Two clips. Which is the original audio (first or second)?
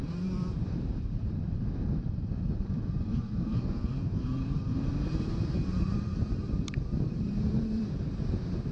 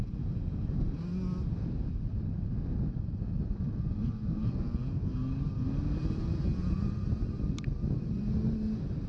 second